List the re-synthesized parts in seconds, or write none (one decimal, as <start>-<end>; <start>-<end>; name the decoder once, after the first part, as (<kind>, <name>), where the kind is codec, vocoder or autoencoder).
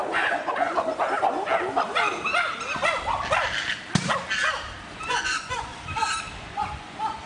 0.0-0.5 (vocoder, Vocos); 4.9-5.7; 6.4-7.3